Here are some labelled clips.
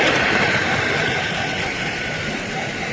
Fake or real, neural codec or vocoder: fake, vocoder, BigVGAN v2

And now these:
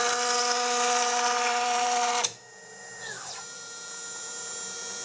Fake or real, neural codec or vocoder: fake, vocoder, BigVGAN v2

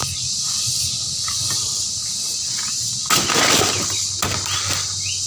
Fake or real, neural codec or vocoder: real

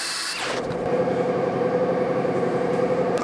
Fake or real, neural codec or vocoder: fake, vocoder, BigVGAN v2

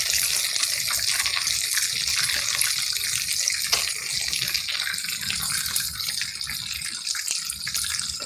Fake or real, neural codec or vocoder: real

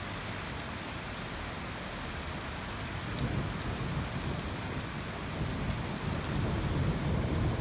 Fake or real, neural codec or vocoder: real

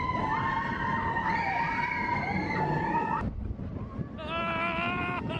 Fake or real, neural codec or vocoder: real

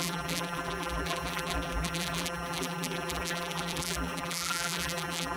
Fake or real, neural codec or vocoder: fake, vocoder, BigVGAN v2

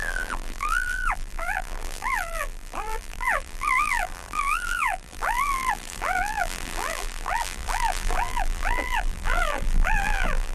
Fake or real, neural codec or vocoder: fake, vocoder, BigVGAN v2